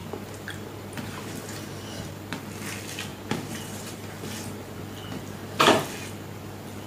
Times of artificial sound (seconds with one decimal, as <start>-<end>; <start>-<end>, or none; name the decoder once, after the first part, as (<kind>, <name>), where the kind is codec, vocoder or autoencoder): 0.0-2.1 (vocoder, BigVGAN v2); 3.1-4.8